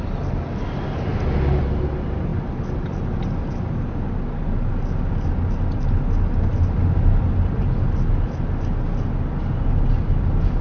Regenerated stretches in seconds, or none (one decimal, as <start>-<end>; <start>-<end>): none